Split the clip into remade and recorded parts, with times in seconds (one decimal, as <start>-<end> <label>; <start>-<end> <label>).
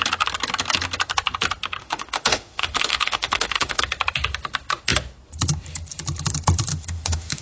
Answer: 0.0-1.8 recorded; 1.8-3.8 remade; 3.8-6.7 recorded; 6.7-7.4 remade